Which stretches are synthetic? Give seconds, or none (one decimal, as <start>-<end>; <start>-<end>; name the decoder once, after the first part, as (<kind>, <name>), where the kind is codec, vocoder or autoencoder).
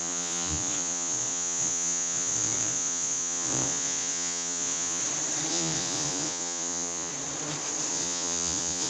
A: 0.0-5.0 (vocoder, Vocos); 5.5-7.1; 7.9-8.9